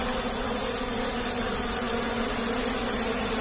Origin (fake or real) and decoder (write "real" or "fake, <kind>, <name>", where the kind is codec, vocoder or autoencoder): real